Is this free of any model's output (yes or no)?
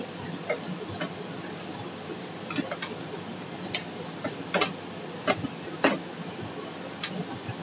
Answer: yes